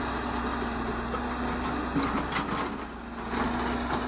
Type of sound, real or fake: real